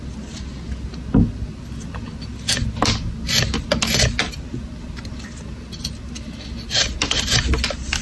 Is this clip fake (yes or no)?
no